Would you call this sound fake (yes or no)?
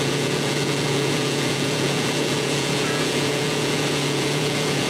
yes